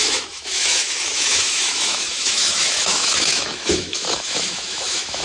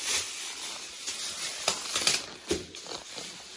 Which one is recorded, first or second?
second